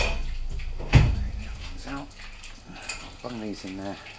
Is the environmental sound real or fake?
real